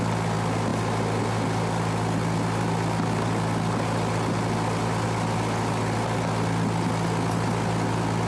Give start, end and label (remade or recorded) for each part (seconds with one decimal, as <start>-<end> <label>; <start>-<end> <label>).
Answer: 0.0-8.3 recorded